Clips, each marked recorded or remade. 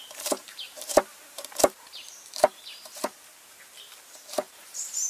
remade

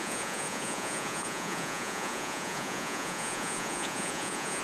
remade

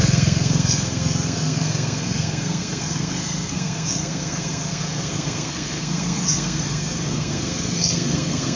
remade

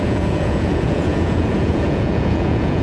remade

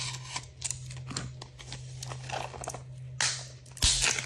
recorded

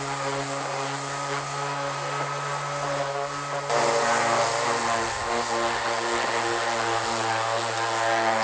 recorded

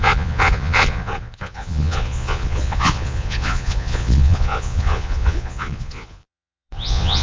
remade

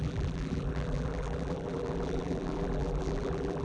remade